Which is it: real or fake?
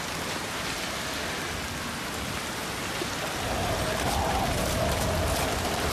real